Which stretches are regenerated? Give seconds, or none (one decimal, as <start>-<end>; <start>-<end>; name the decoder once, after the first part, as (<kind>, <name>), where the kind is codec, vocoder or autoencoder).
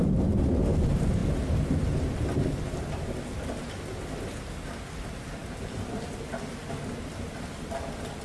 none